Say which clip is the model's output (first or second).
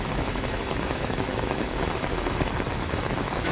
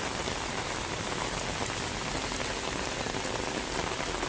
first